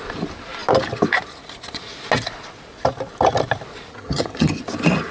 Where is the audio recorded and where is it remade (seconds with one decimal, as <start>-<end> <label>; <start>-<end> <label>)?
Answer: 0.0-3.9 recorded; 3.9-4.6 remade; 4.6-5.1 recorded